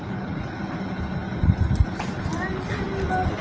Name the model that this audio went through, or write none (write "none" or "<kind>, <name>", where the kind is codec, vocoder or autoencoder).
none